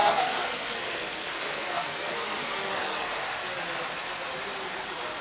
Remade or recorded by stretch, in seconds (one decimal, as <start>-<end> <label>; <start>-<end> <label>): 0.0-3.1 remade; 3.1-5.2 recorded